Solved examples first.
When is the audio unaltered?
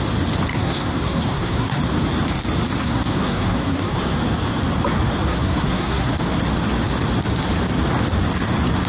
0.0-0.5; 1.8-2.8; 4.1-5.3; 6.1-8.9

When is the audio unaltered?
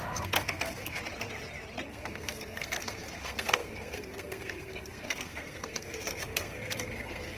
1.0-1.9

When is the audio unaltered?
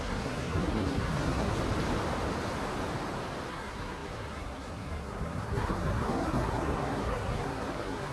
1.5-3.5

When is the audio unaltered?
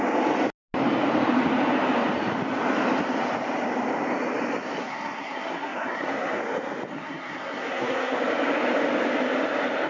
0.0-4.8; 6.4-6.9; 8.2-9.9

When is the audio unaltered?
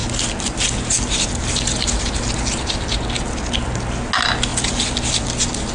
0.0-5.7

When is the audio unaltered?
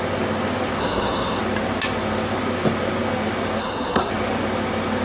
0.0-0.8; 1.4-3.6; 4.1-5.0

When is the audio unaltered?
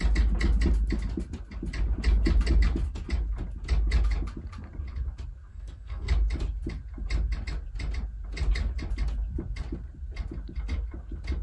0.0-5.5; 6.1-11.4